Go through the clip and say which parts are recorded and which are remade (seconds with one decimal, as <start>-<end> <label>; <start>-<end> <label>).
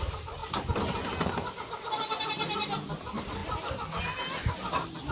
0.0-5.1 recorded